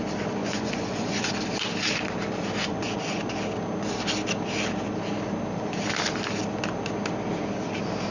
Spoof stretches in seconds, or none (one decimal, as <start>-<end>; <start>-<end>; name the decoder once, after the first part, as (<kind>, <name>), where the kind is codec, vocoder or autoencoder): 0.4-1.3 (vocoder, Vocos); 2.6-3.2